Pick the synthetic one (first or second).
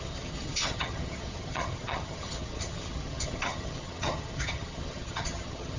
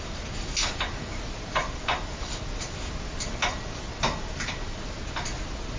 first